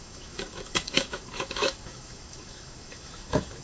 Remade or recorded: remade